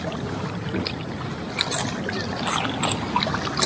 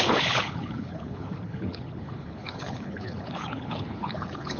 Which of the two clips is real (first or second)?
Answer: first